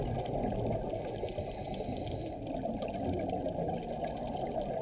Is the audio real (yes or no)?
yes